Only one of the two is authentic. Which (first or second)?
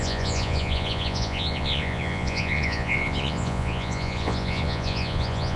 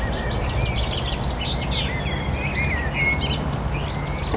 second